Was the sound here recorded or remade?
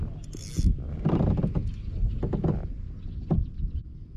recorded